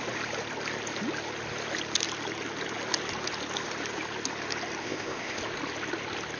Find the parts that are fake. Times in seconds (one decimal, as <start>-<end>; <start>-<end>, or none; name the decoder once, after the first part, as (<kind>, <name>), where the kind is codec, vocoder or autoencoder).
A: 4.8-5.4 (codec, ZipCodec)